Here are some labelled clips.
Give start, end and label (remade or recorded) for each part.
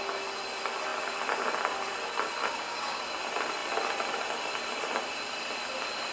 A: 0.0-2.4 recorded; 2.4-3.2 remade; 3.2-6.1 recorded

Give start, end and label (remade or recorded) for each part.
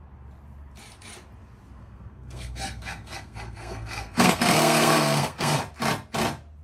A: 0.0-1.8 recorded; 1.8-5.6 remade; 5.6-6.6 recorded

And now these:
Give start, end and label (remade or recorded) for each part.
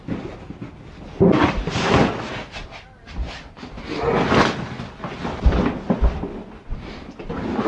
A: 0.0-7.7 recorded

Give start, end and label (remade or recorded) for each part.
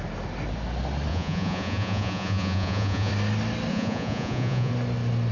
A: 0.0-1.1 recorded; 1.1-3.1 remade; 3.1-3.7 recorded; 3.7-4.7 remade; 4.7-5.3 recorded